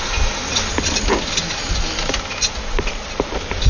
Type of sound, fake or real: real